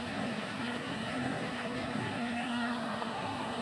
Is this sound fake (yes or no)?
yes